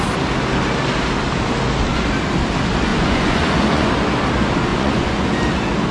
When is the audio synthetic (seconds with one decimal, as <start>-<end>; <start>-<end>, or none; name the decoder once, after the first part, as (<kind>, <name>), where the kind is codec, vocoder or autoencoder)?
2.9-3.9 (vocoder, Vocos); 4.7-5.3